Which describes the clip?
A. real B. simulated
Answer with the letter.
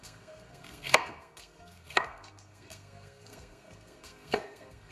B